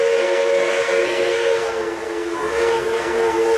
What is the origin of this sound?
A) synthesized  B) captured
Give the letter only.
A